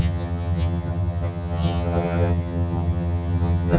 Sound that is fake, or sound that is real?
fake